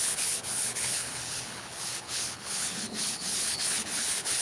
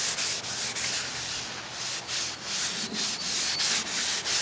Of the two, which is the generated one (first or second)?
first